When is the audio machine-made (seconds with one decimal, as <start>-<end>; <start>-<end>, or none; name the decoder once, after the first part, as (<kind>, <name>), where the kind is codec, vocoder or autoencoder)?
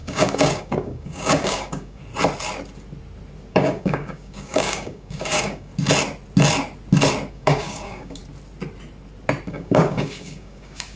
0.0-2.0 (codec, DAC); 3.5-5.7; 7.3-8.2; 9.5-11.0